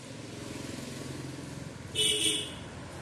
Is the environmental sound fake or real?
real